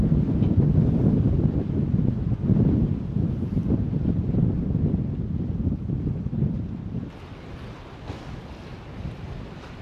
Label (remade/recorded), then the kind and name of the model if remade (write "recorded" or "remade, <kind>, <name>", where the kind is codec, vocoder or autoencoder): recorded